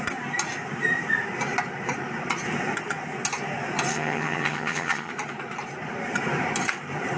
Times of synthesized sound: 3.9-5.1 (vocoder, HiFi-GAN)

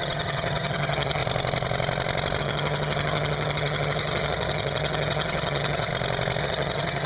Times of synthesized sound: 0.0-1.2 (vocoder, HiFi-GAN); 2.4-5.9; 6.4-7.1

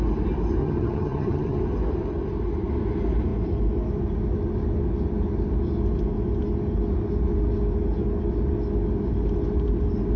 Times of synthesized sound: 0.6-1.6 (vocoder, HiFi-GAN)

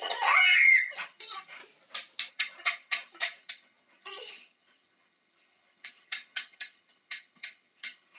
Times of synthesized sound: 0.0-1.6 (vocoder, HiFi-GAN); 2.3-8.2

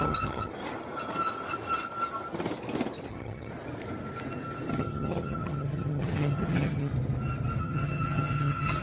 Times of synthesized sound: 0.0-0.5 (vocoder, HiFi-GAN); 3.1-3.5; 4.7-6.9; 7.6-8.8

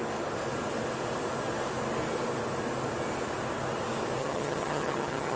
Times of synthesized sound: 4.2-5.4 (vocoder, HiFi-GAN)